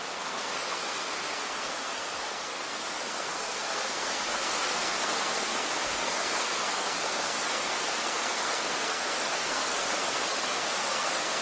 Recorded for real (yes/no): no